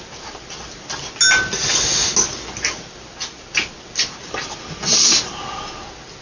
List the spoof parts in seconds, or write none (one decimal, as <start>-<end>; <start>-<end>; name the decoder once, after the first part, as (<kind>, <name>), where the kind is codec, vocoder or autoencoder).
none